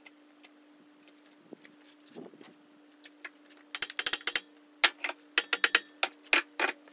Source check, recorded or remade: recorded